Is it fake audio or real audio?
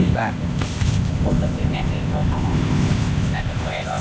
fake